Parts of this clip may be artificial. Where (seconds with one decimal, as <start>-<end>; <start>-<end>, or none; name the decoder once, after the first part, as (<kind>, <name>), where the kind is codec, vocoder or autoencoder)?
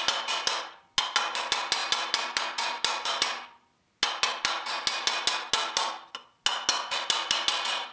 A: none